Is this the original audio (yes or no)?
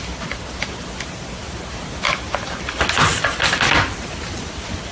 yes